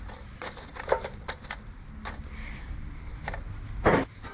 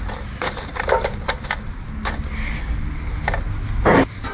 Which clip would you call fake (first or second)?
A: first